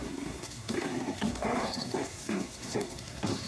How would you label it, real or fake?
fake